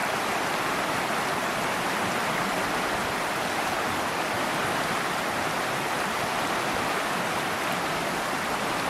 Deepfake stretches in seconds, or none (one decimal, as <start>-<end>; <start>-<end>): none